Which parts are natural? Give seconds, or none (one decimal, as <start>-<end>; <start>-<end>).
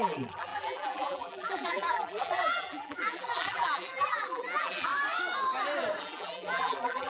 4.9-6.0